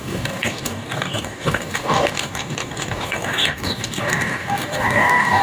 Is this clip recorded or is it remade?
remade